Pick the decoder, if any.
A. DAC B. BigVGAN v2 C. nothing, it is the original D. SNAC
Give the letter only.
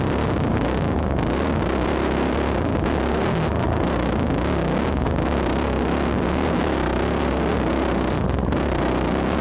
C